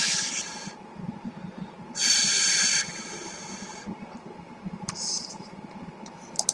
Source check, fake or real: fake